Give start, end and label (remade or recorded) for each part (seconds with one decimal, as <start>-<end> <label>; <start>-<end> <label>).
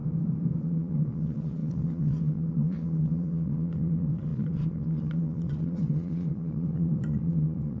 0.0-0.6 recorded; 0.6-7.8 remade